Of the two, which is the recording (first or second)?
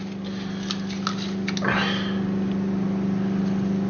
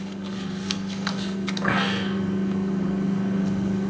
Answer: first